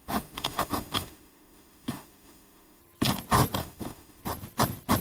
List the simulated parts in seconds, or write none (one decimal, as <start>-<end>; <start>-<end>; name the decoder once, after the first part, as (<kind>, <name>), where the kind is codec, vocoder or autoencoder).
0.0-2.8 (autoencoder, DAC-VAE); 3.6-4.2